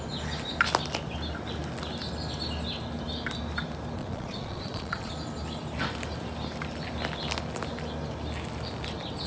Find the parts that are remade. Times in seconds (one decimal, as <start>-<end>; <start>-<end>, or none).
4.0-5.1